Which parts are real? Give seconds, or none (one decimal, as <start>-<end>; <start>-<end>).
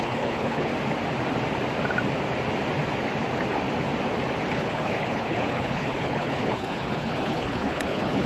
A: 0.7-4.5